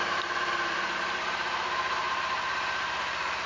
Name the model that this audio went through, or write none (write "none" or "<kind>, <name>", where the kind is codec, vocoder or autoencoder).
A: vocoder, BigVGAN v2